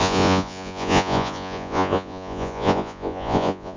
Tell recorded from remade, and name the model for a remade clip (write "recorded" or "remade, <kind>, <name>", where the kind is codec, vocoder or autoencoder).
remade, vocoder, Vocos